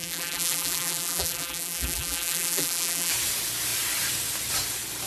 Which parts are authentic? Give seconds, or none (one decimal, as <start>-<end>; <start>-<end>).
3.1-5.1